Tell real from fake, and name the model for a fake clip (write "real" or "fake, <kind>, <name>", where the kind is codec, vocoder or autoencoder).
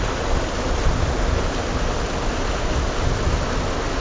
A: real